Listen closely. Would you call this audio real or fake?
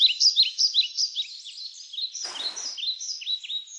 real